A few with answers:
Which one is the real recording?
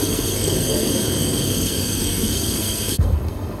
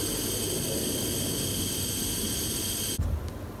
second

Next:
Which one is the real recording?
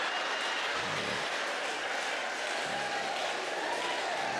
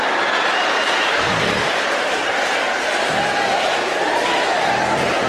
first